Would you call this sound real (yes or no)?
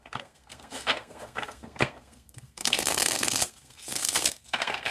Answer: no